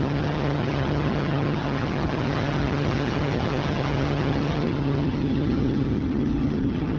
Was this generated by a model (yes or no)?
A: yes